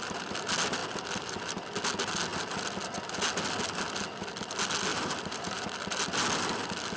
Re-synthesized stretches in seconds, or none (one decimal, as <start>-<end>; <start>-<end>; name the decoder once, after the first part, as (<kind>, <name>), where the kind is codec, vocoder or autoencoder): 4.9-5.6 (vocoder, BigVGAN v2)